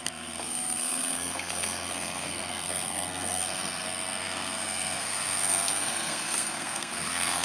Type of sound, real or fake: fake